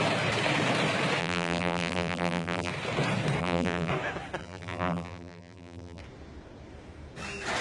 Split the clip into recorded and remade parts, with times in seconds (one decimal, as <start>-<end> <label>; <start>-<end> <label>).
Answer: 0.0-1.2 recorded; 1.2-2.7 remade; 2.7-3.4 recorded; 3.4-3.9 remade; 3.9-4.4 recorded; 4.4-6.0 remade; 6.0-7.6 recorded